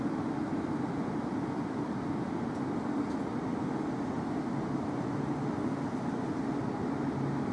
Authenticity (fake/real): real